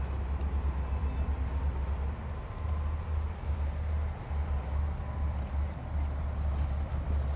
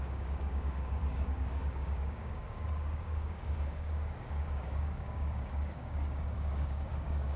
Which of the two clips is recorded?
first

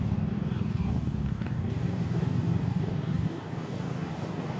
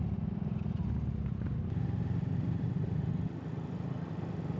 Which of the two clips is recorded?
second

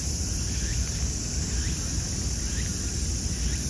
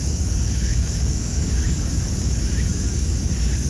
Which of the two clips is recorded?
first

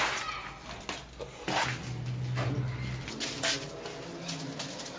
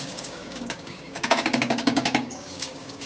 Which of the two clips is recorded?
first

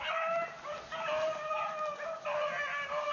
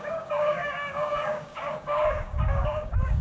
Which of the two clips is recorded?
first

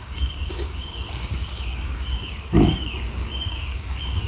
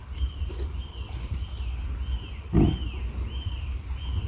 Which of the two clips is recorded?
second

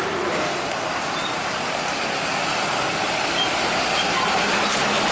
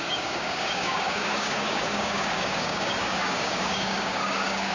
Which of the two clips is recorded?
first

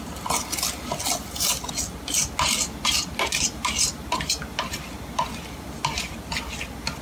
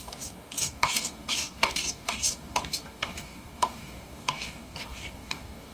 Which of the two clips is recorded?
first